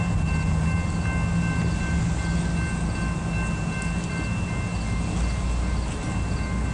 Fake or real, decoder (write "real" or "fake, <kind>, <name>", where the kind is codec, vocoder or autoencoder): real